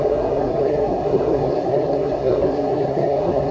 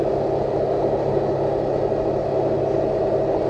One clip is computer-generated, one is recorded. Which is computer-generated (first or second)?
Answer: first